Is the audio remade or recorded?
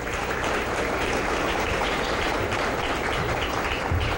remade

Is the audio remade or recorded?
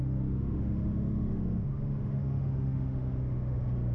remade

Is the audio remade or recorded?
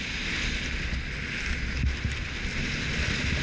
recorded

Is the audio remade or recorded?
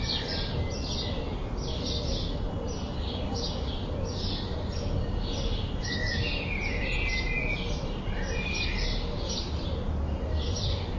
recorded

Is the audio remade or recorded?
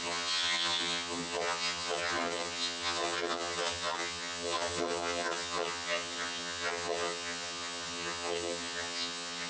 remade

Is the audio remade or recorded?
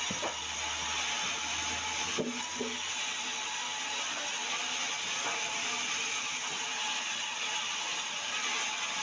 recorded